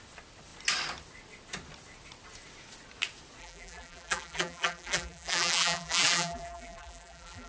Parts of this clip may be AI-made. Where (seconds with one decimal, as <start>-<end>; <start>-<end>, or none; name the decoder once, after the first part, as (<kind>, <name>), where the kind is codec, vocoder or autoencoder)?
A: 3.4-7.5 (vocoder, BigVGAN v2)